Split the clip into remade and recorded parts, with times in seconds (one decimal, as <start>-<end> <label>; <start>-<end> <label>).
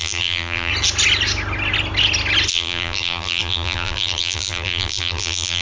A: 0.0-0.7 remade; 0.7-2.5 recorded; 2.5-5.6 remade